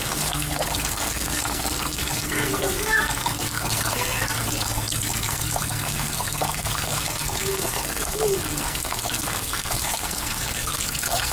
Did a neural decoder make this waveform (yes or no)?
yes